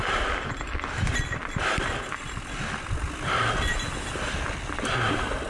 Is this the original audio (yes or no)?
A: yes